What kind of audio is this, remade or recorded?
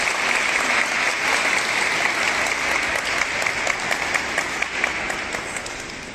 recorded